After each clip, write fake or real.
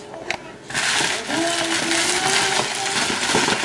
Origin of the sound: real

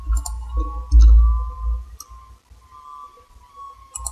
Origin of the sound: real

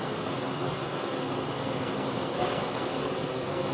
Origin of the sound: fake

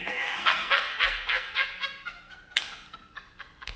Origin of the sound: fake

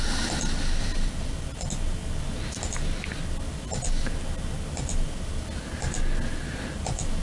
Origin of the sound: real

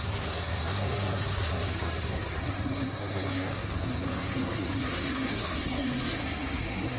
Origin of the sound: fake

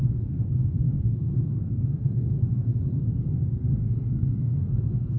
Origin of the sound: fake